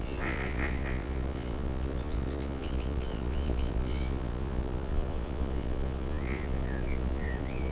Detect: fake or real fake